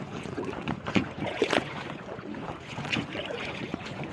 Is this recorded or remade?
remade